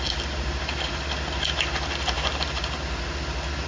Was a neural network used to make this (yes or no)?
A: no